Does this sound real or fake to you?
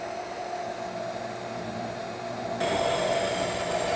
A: real